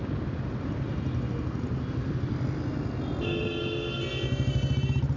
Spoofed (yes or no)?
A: no